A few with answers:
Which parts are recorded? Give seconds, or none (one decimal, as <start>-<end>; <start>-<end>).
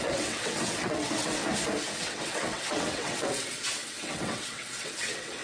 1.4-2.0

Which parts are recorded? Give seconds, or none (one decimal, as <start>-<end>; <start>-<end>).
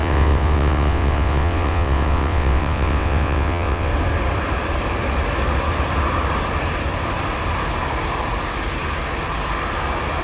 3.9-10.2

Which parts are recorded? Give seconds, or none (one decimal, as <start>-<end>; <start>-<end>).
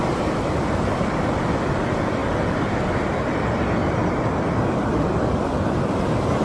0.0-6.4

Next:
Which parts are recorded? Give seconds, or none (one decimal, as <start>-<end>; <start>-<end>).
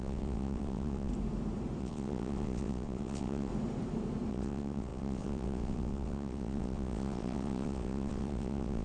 1.1-1.8; 3.5-4.3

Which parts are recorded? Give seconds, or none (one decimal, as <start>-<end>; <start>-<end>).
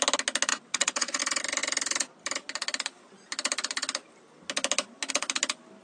0.0-0.5; 1.2-5.8